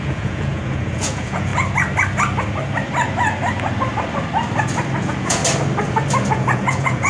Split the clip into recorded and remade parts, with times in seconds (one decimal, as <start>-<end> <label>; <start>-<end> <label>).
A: 0.0-1.5 remade; 1.5-5.0 recorded; 5.0-5.4 remade; 5.4-6.3 recorded; 6.3-7.1 remade